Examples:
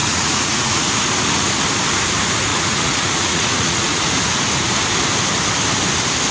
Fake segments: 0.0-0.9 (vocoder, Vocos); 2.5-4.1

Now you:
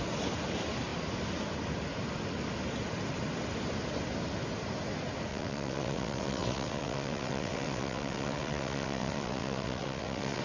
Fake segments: 5.3-10.4 (vocoder, WaveNeXt)

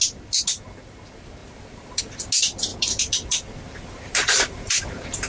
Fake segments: 1.4-2.0 (vocoder, BigVGAN v2); 2.7-5.3

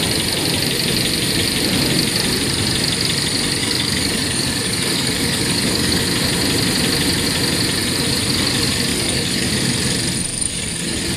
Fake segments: 3.6-6.0 (codec, DAC); 8.9-9.5; 10.3-11.2

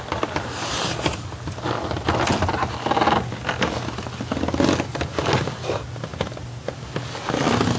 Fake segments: none